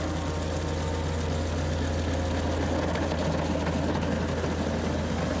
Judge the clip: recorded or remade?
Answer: recorded